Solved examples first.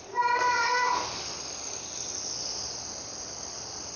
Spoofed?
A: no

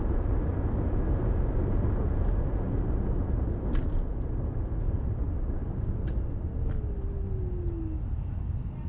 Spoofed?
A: no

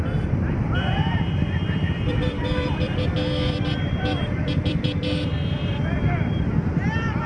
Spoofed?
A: yes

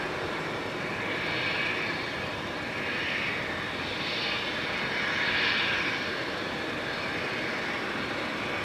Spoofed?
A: no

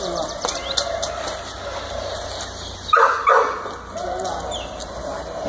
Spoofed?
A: no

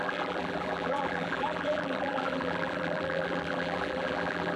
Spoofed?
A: yes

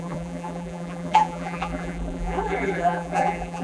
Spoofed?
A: yes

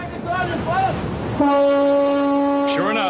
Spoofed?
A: no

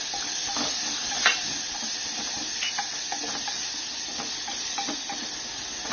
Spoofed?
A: no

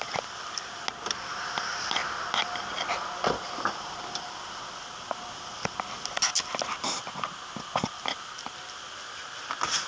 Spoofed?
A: no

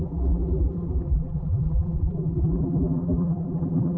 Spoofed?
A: yes